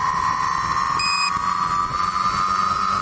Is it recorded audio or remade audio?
recorded